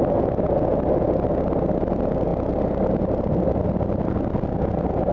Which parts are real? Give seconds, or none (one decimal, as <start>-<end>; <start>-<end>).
0.0-5.1